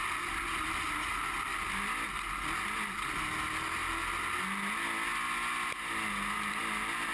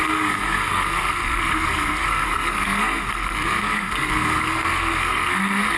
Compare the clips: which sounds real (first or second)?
first